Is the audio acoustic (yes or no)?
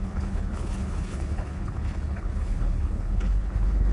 no